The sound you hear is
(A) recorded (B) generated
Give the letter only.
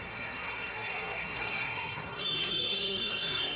B